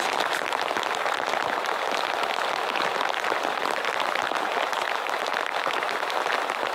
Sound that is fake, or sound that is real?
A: real